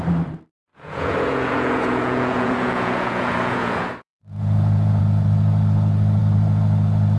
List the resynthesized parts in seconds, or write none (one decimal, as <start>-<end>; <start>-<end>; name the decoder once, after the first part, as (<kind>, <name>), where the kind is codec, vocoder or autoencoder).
0.7-5.0 (vocoder, Vocos)